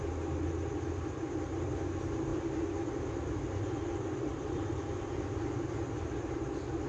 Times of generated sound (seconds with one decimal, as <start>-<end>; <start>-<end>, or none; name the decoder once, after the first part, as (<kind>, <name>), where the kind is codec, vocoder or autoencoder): 2.3-6.3 (vocoder, BigVGAN v2)